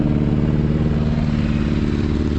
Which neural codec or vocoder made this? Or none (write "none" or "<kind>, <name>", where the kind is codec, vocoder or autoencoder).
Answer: none